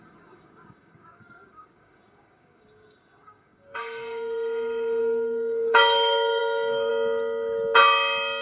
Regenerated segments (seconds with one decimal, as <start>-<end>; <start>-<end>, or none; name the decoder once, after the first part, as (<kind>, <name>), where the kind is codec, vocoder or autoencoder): 0.0-6.9 (codec, DAC)